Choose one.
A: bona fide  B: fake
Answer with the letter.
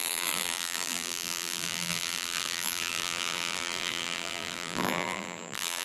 B